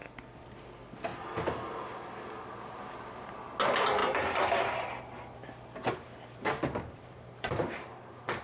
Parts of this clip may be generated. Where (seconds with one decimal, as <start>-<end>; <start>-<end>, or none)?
5.4-8.4